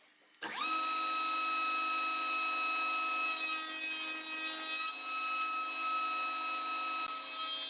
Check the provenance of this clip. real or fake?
real